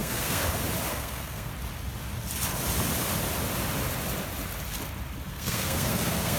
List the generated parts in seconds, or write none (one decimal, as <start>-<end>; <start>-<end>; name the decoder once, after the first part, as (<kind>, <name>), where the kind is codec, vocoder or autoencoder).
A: 0.0-0.4 (codec, SNAC); 0.9-1.5; 5.3-6.4